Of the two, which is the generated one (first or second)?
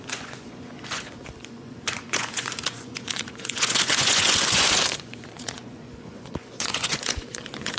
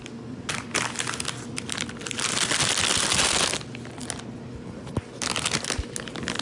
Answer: first